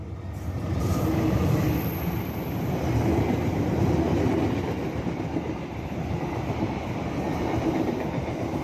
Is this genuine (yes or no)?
yes